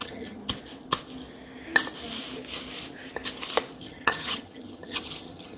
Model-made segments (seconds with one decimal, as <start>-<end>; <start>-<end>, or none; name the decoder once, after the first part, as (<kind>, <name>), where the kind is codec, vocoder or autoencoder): 0.0-0.4 (vocoder, HiFi-GAN); 3.8-5.6